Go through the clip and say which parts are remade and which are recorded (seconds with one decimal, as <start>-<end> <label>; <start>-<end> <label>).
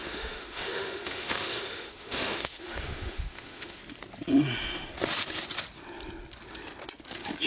0.0-3.8 remade; 3.8-7.5 recorded